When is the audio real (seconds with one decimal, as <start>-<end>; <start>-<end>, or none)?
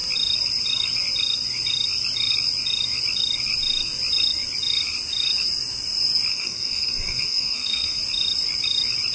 0.0-6.3; 8.0-9.1